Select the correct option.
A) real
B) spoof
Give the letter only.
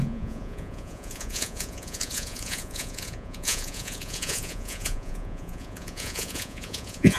B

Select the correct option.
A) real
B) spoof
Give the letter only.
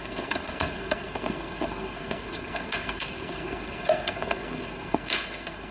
B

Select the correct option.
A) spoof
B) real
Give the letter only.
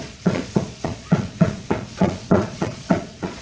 A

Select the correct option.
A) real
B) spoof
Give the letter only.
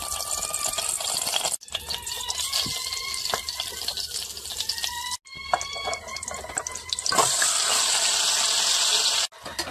A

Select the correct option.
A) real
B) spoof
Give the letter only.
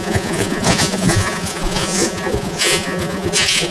B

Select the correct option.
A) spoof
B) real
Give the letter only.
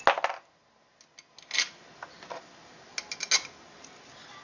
B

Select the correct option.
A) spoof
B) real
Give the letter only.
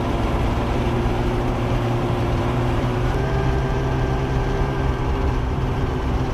A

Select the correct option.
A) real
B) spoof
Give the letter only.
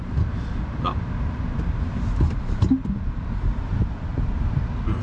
A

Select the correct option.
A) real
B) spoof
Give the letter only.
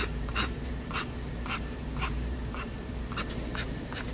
B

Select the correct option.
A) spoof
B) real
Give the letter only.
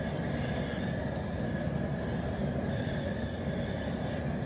B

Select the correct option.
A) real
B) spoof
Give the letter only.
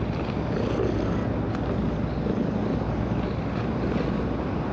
A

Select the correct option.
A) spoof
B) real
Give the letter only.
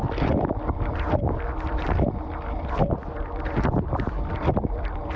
A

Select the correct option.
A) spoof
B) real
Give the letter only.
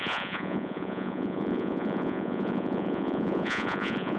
A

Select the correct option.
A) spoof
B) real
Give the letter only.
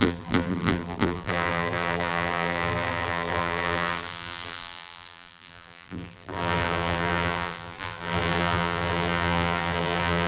A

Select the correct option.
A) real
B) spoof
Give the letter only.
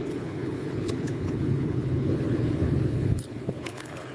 B